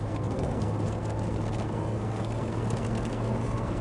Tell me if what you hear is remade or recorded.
remade